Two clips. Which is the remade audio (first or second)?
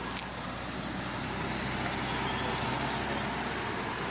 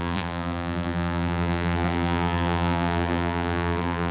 second